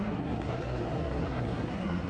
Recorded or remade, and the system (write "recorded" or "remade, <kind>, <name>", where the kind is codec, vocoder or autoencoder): remade, codec, SNAC